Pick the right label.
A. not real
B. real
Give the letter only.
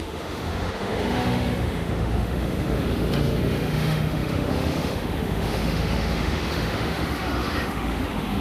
A